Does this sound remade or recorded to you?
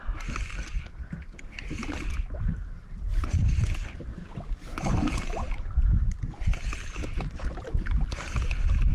recorded